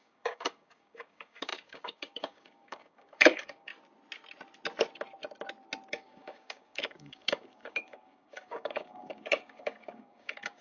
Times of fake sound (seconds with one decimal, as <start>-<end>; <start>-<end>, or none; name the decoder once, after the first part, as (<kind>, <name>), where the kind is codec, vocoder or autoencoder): 0.0-3.7 (codec, DAC); 5.9-10.6